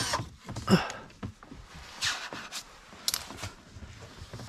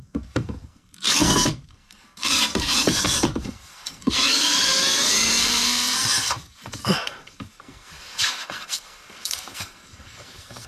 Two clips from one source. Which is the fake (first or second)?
second